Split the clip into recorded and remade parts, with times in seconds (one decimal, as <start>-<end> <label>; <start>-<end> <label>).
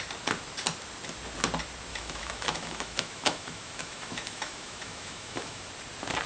0.0-1.9 recorded; 1.9-5.7 remade; 5.7-6.3 recorded